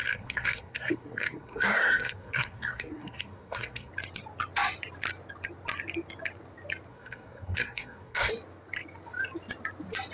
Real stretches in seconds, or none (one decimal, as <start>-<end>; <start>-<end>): 3.9-6.9; 8.3-10.1